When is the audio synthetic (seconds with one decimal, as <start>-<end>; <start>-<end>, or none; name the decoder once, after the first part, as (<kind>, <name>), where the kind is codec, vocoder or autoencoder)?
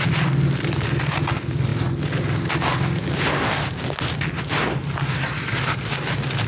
none